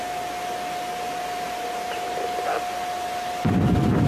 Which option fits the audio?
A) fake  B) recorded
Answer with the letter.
B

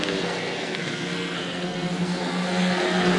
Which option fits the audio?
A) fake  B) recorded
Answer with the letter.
A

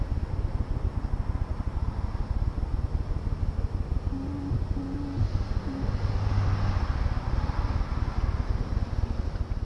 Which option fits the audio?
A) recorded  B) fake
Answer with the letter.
A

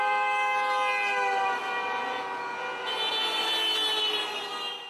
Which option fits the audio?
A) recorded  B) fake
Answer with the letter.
A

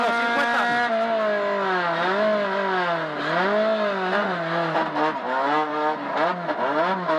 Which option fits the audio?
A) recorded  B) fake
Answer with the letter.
A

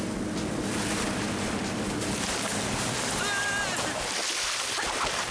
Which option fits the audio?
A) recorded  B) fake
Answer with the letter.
A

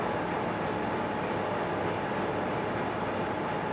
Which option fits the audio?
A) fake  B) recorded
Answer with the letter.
B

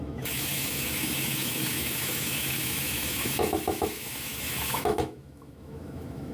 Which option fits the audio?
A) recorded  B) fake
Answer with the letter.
B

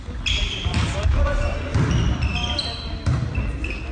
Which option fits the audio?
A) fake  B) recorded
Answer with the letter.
B